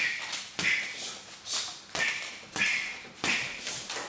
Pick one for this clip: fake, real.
real